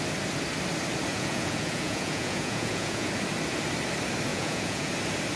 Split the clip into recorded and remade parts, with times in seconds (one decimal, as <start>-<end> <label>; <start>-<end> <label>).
0.0-1.1 recorded; 1.1-3.1 remade; 3.1-4.3 recorded; 4.3-4.9 remade; 4.9-5.4 recorded